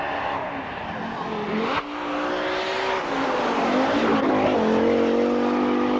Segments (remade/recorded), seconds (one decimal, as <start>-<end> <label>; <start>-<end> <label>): 0.0-6.0 recorded